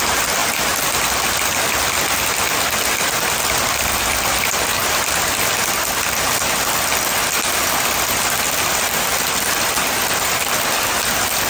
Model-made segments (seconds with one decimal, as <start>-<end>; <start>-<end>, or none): none